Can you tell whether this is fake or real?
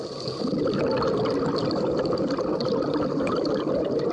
real